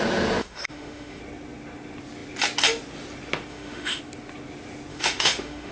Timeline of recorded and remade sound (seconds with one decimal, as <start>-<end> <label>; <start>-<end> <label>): 0.0-0.4 recorded; 0.4-1.2 remade; 1.2-3.5 recorded; 3.5-4.0 remade; 4.0-4.9 recorded; 4.9-5.7 remade